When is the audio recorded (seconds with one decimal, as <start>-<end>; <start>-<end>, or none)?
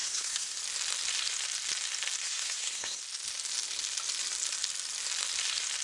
0.6-2.2; 3.0-5.8